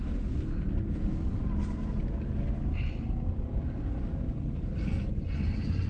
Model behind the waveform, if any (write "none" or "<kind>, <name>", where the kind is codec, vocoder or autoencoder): none